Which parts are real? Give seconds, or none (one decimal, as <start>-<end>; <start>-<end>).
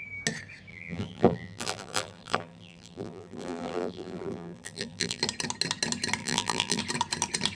0.0-0.7; 5.2-6.2; 6.8-7.5